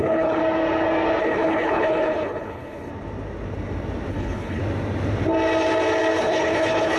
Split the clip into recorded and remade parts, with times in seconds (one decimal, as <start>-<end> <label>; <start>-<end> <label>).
0.0-0.4 remade; 0.4-1.2 recorded; 1.2-2.9 remade; 2.9-4.1 recorded; 4.1-4.6 remade; 4.6-6.2 recorded; 6.2-7.0 remade